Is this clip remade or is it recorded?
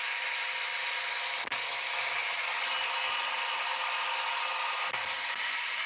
recorded